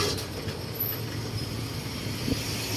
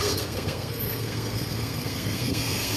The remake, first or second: second